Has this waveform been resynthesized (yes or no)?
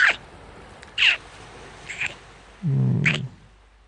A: no